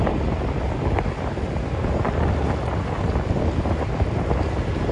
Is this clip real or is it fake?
real